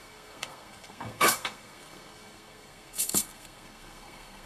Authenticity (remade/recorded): remade